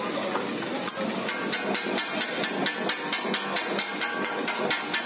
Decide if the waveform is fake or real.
real